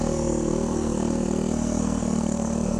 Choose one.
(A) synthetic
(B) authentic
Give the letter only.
A